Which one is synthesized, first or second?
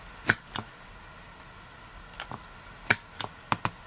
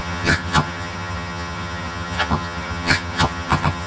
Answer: second